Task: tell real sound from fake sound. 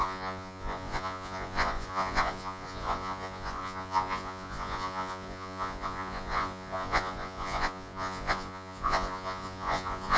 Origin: fake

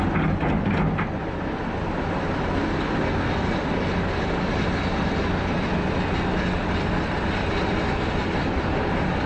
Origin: real